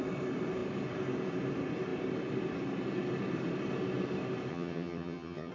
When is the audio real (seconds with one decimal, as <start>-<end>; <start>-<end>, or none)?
0.0-4.5